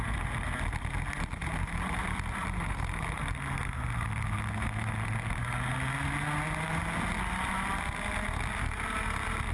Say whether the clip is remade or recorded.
recorded